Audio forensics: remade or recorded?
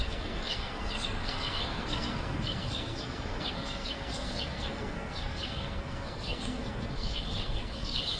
remade